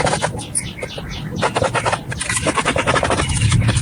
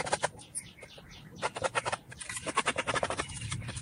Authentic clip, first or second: first